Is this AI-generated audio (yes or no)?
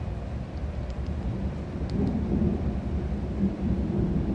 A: yes